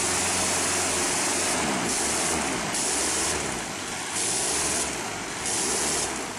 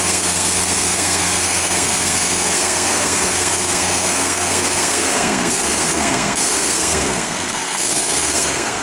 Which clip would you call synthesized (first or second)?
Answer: second